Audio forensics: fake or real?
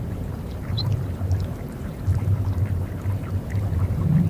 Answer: fake